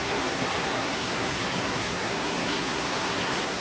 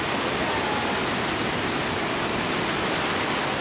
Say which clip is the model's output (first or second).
first